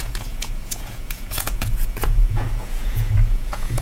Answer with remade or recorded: remade